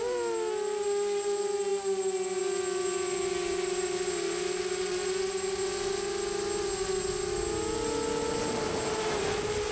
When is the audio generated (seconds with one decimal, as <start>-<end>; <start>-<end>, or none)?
none